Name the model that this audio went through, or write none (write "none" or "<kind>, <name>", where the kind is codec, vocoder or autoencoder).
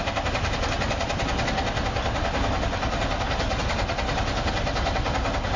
none